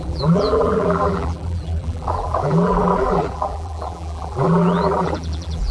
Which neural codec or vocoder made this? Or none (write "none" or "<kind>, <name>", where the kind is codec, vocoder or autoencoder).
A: vocoder, BigVGAN v2